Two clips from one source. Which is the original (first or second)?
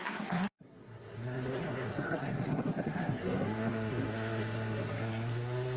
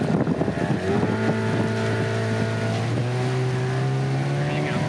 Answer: second